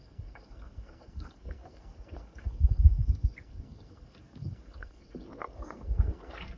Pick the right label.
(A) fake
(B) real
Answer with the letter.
A